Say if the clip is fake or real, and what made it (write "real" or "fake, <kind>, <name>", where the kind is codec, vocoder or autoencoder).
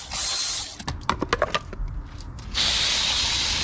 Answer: real